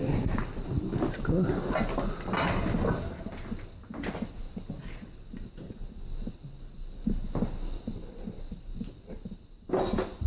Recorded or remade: recorded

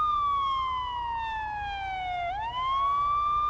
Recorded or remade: recorded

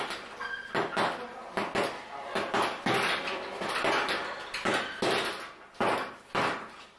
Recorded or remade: recorded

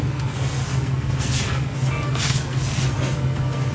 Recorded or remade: remade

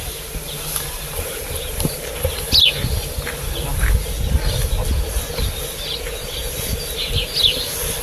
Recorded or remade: recorded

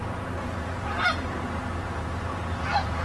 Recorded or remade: remade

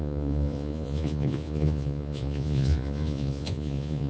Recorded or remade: remade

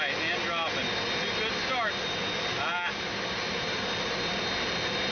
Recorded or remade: recorded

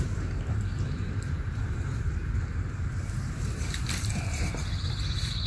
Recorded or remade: remade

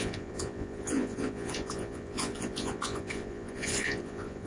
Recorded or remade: remade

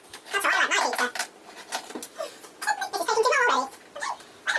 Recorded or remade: recorded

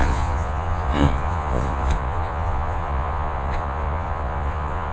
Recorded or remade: remade